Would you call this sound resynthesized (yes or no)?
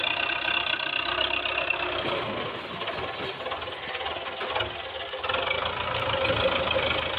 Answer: no